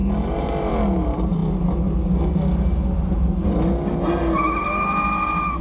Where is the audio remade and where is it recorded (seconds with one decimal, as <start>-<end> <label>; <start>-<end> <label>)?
0.0-5.6 recorded